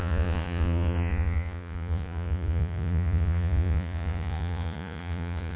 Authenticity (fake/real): fake